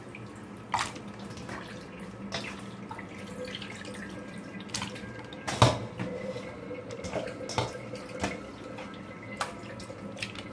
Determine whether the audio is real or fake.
real